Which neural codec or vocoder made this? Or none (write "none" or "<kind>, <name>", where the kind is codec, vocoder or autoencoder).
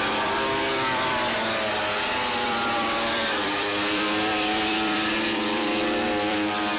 vocoder, BigVGAN v2